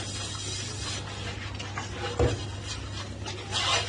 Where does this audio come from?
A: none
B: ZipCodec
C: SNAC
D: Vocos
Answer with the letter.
A